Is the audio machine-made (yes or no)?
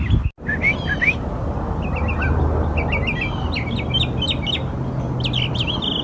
no